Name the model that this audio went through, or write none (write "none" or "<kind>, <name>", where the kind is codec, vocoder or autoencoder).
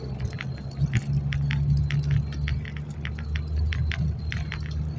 none